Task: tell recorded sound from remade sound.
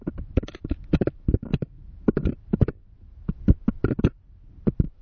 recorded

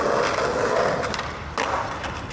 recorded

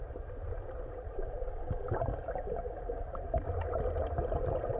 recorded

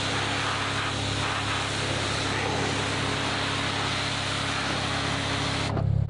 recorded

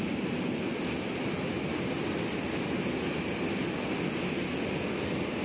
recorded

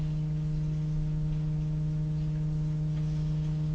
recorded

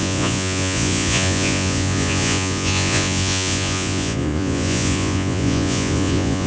remade